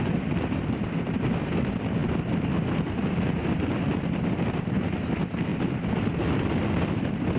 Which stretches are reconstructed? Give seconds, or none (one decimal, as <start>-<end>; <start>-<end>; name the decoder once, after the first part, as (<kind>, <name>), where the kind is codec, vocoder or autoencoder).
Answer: none